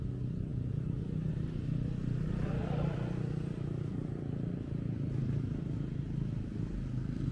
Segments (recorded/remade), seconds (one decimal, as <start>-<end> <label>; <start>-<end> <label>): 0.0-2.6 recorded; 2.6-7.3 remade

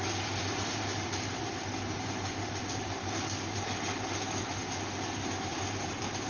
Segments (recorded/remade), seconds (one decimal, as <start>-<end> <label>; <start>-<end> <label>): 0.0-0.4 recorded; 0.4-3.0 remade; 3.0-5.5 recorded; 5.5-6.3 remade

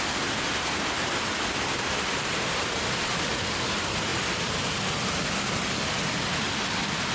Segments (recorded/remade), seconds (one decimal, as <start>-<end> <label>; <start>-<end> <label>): 0.0-7.1 recorded